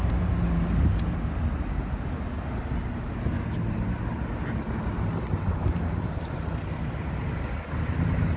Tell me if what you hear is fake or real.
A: real